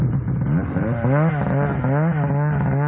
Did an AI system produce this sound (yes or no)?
no